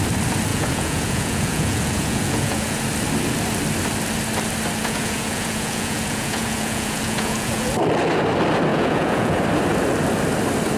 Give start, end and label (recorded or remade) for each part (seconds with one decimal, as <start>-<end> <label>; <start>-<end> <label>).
0.0-0.5 recorded; 0.5-2.8 remade; 2.8-4.8 recorded; 4.8-7.7 remade; 7.7-8.7 recorded; 8.7-9.4 remade; 9.4-10.8 recorded